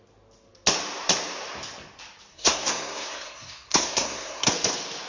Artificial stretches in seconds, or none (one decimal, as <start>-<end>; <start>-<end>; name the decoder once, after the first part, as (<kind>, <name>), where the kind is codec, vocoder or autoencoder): 2.3-4.5 (codec, SNAC)